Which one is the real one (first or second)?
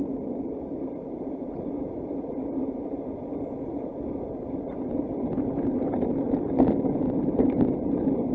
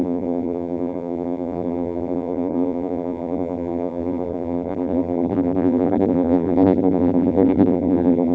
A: first